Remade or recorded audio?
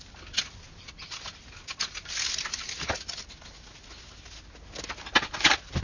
recorded